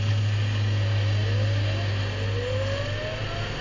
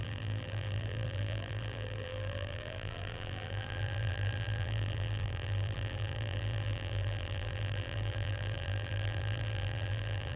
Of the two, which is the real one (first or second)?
first